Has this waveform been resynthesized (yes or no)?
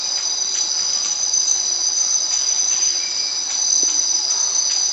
no